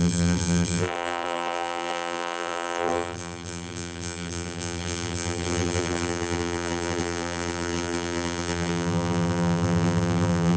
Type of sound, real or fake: fake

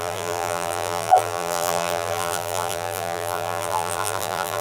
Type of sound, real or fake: fake